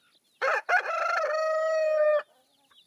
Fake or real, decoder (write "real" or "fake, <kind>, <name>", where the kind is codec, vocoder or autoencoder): real